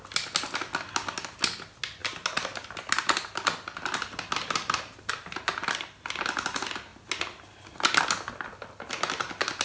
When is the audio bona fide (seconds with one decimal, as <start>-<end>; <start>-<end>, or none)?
0.0-9.6